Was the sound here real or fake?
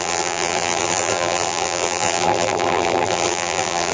fake